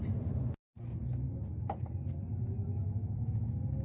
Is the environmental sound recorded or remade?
recorded